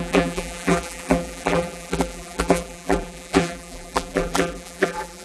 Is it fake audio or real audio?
fake